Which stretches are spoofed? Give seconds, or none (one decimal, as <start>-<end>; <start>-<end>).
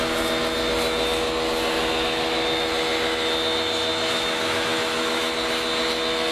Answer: 3.9-5.3